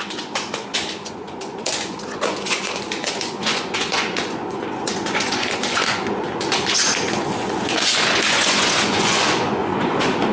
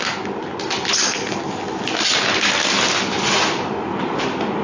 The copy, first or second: first